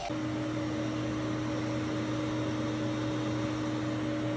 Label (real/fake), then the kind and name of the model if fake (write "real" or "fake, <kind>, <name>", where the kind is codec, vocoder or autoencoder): real